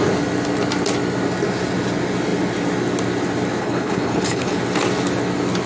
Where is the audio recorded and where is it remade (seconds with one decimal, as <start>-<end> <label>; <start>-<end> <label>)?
0.0-3.6 recorded; 3.6-4.6 remade; 4.6-5.7 recorded